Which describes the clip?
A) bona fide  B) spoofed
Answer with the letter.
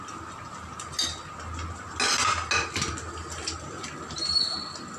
A